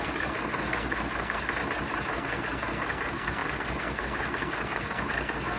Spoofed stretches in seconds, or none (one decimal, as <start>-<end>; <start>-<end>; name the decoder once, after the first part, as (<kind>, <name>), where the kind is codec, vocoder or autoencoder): 0.0-1.6 (codec, SNAC); 2.1-5.6